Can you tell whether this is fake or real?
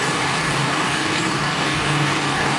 fake